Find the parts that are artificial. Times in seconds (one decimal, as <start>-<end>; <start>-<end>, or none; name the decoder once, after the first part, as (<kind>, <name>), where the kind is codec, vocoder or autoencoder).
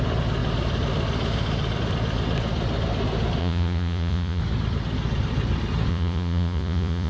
3.4-4.4 (vocoder, Vocos); 5.9-7.1